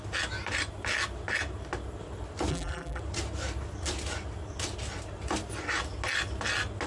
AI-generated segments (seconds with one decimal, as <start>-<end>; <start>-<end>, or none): 2.5-3.0